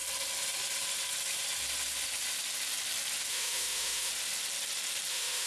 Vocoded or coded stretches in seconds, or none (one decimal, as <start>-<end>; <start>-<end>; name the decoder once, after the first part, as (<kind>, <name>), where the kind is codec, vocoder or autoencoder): 3.3-4.1 (autoencoder, DAC-VAE); 5.1-5.5